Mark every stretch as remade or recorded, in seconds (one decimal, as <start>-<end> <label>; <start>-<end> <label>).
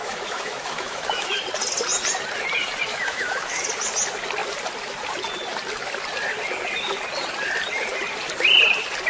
0.0-1.4 remade; 1.4-2.9 recorded; 2.9-3.6 remade; 3.6-9.1 recorded